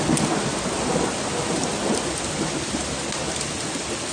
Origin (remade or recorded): recorded